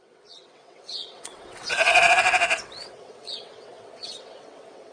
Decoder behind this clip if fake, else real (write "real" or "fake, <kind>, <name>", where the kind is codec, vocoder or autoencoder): fake, vocoder, WaveNeXt